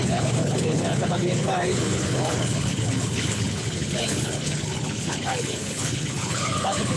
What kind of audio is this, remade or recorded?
remade